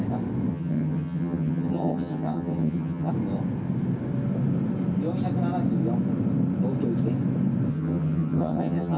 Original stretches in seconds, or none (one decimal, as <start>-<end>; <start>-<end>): 0.0-0.5; 3.1-7.7